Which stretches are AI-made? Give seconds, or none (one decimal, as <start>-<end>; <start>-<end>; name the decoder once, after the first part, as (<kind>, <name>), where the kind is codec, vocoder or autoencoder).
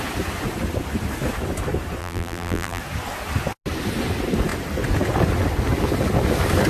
2.0-2.8 (vocoder, BigVGAN v2)